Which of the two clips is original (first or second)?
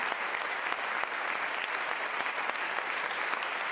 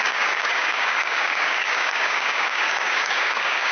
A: first